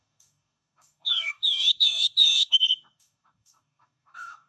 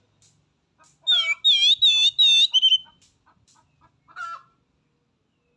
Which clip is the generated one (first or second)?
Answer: first